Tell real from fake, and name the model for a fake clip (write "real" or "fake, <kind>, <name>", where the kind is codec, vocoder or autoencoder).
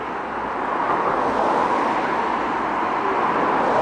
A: real